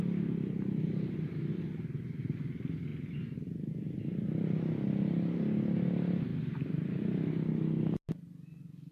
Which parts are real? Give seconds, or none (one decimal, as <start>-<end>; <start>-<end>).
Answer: 0.0-2.9; 3.5-6.3; 7.0-8.9